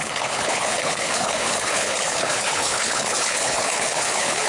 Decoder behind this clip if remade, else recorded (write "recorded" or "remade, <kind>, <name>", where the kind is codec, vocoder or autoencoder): remade, codec, HILCodec